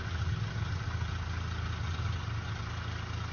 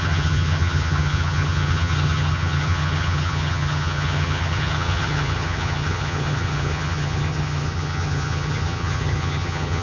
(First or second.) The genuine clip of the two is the first